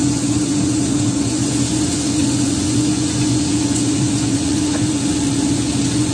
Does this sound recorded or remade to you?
remade